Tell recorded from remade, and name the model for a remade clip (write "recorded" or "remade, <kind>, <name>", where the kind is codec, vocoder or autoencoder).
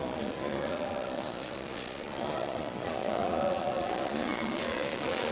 remade, vocoder, Vocos